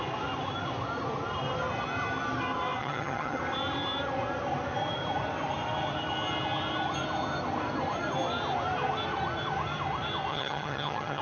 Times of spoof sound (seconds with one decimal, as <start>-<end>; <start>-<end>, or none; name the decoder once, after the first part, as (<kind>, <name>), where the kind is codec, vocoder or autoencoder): 2.8-3.4 (vocoder, HiFi-GAN); 10.3-11.2